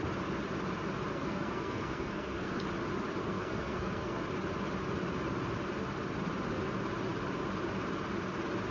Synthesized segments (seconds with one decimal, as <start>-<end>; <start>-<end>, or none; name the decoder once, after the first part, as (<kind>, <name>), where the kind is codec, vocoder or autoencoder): 1.1-2.6 (codec, SNAC); 3.2-4.2